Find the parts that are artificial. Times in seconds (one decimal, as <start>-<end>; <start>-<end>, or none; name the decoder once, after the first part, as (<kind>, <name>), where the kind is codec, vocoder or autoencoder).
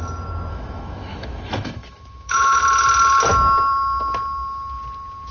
0.5-2.6 (autoencoder, DAC-VAE)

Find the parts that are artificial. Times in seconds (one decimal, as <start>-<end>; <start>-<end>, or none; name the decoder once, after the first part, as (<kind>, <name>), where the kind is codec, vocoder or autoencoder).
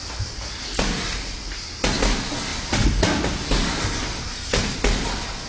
2.5-4.4 (vocoder, BigVGAN v2)